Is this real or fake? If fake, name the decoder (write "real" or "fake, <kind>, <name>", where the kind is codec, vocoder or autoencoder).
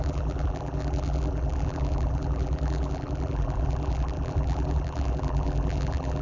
fake, vocoder, BigVGAN v2